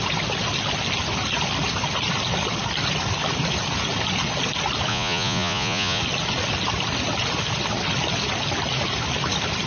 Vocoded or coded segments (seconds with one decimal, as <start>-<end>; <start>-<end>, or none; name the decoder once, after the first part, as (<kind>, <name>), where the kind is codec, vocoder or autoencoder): 4.9-6.0 (vocoder, Vocos)